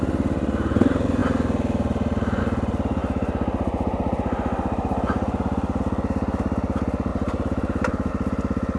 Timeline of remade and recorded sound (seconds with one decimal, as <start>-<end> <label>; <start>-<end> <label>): 0.0-7.1 recorded; 7.1-8.1 remade; 8.1-8.8 recorded